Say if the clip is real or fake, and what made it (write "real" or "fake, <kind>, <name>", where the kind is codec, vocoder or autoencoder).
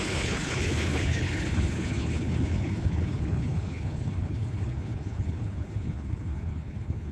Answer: fake, codec, HILCodec